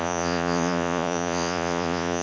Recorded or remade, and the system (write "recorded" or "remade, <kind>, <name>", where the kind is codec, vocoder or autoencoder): remade, vocoder, Vocos